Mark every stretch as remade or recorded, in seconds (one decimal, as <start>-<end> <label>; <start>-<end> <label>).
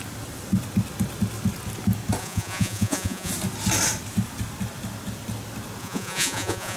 0.0-2.2 recorded; 2.2-3.3 remade; 3.3-5.8 recorded; 5.8-6.8 remade